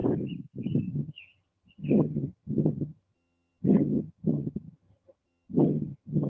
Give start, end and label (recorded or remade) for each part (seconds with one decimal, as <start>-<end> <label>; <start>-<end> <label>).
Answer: 0.0-0.9 recorded; 0.9-6.3 remade